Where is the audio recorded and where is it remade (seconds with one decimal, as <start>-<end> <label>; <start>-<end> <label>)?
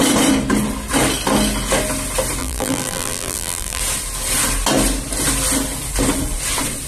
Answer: 0.0-2.4 recorded; 2.4-3.8 remade; 3.8-6.9 recorded